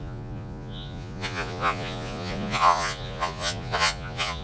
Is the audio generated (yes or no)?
yes